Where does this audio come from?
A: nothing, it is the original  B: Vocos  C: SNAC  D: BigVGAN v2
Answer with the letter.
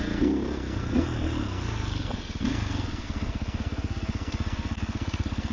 C